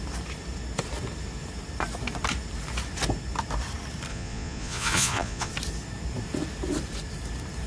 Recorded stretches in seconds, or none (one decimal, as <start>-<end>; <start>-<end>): 0.0-4.1; 5.5-7.7